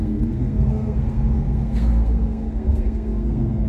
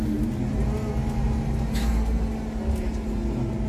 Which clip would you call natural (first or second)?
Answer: second